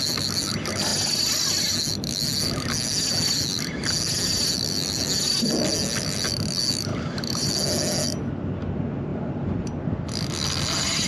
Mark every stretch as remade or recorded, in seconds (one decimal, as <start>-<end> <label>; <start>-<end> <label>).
0.0-6.9 recorded; 6.9-7.5 remade; 7.5-9.1 recorded; 9.1-9.7 remade; 9.7-11.1 recorded